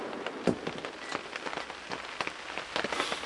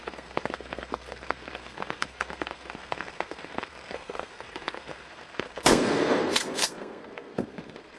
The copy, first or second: second